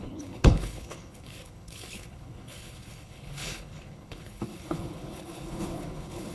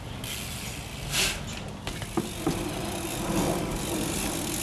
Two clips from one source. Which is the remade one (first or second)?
first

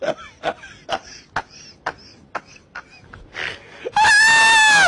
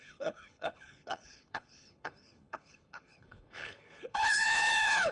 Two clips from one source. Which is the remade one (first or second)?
second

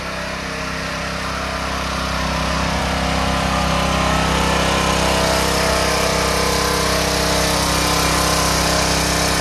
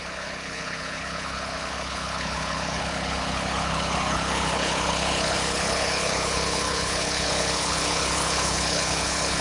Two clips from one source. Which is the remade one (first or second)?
second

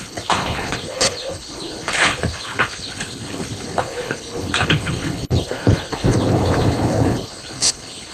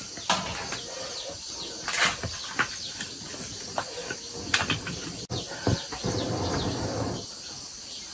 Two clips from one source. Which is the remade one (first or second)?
first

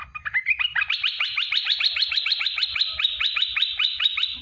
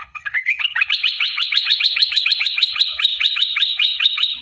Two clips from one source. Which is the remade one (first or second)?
second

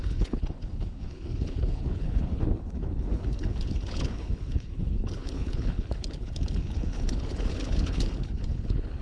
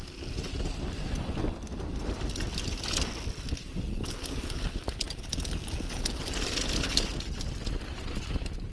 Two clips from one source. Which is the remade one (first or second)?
first